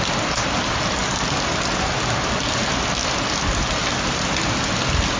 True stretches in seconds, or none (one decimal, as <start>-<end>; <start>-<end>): 0.0-5.2